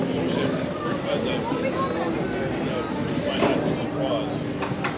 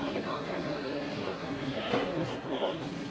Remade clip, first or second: second